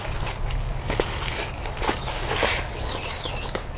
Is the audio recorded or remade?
remade